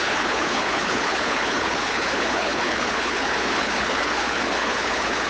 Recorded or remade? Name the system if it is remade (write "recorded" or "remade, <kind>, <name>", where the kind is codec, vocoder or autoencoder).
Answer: remade, codec, HILCodec